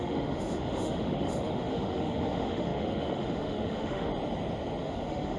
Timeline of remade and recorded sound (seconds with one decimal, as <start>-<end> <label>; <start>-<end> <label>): 0.0-4.1 remade; 4.1-4.8 recorded; 4.8-5.4 remade